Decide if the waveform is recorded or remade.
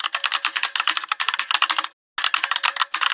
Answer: recorded